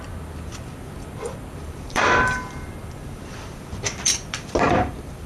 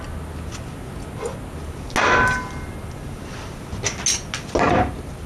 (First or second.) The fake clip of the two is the first